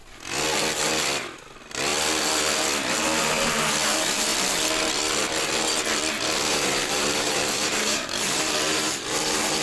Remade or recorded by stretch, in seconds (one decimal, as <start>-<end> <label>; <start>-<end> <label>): 0.0-6.5 recorded; 6.5-9.6 remade